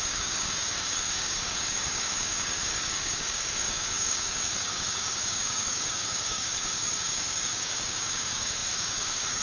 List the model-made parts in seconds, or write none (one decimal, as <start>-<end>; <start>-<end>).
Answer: 0.0-9.4